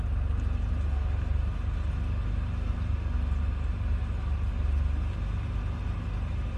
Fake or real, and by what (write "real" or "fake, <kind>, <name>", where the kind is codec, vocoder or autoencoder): real